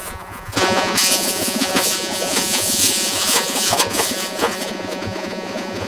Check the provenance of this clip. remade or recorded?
remade